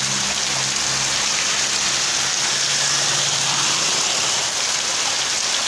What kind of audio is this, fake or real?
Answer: real